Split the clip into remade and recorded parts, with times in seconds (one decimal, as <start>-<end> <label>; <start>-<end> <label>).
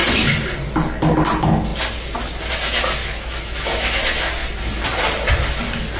0.0-3.0 recorded; 3.0-4.0 remade; 4.0-6.0 recorded